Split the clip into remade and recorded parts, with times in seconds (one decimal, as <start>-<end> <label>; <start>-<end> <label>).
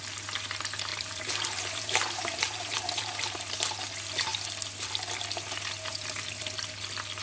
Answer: 0.0-0.9 recorded; 0.9-3.5 remade; 3.5-7.2 recorded